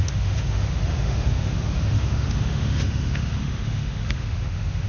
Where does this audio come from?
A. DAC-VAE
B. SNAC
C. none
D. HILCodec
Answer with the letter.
A